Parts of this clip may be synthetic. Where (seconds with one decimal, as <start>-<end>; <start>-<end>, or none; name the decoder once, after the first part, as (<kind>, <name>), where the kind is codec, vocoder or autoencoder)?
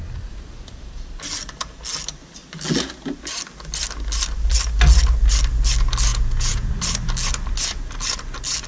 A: 6.1-6.7 (vocoder, Vocos)